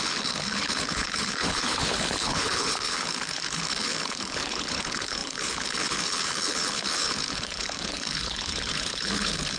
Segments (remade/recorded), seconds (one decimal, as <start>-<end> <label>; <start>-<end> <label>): 0.0-9.6 remade